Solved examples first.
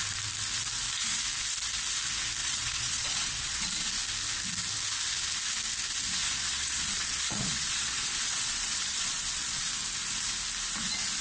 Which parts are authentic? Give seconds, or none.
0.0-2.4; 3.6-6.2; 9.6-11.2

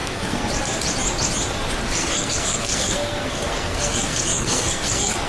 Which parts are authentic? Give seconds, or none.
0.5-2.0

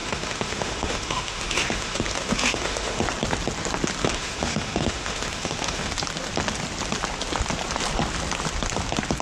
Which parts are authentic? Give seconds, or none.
3.0-4.0; 5.9-9.2

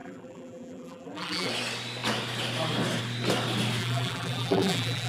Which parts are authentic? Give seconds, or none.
1.5-3.8

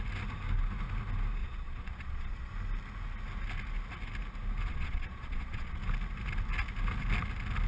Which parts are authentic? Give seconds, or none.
0.0-1.4; 2.5-4.7; 5.8-7.7

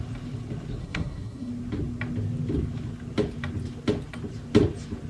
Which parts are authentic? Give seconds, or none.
0.0-0.8; 1.5-5.1

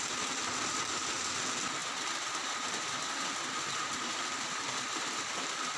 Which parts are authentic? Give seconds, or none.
1.8-3.8

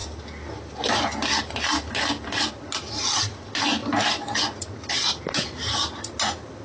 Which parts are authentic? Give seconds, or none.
0.0-6.6